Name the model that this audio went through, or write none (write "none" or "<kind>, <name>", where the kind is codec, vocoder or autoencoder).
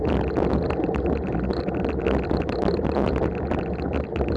vocoder, BigVGAN v2